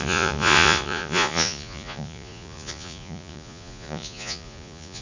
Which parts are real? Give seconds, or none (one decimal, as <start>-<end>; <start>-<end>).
none

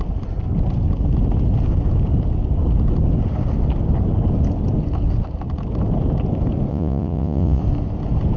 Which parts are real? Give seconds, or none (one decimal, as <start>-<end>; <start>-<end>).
0.0-6.7; 7.6-8.4

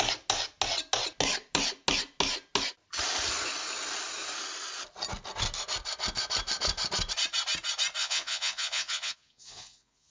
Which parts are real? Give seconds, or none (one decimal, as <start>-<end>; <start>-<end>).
0.0-8.0

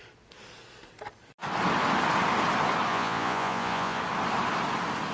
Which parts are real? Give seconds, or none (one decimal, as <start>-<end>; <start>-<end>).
0.0-2.9; 4.0-5.1

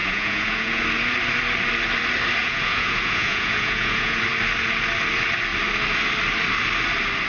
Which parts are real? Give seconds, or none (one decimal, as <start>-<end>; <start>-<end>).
0.8-2.4; 4.2-7.3

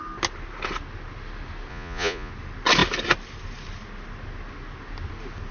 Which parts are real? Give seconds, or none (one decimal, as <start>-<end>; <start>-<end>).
0.0-1.7; 2.3-5.5